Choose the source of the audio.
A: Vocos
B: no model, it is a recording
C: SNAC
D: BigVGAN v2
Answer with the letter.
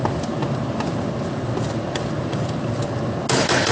B